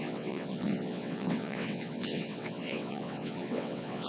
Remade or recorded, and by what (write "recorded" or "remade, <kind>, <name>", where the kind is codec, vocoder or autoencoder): remade, vocoder, WaveNeXt